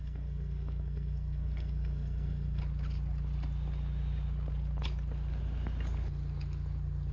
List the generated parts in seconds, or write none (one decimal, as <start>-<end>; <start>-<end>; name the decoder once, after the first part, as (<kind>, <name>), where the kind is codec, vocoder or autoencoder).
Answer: 0.0-2.6 (codec, SNAC)